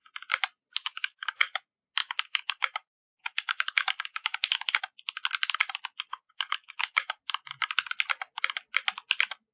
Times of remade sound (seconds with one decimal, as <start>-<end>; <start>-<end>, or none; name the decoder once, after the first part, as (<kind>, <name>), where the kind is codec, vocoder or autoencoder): 0.8-1.6 (codec, DAC); 2.0-4.8; 6.1-7.2